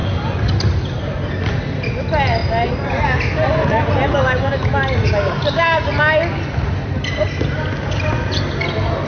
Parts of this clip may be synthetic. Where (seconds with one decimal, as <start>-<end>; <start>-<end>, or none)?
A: none